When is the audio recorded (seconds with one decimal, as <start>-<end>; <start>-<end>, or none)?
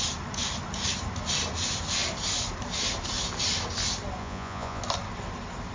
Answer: 0.0-4.2; 4.8-5.7